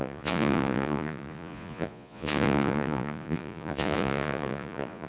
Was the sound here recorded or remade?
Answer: remade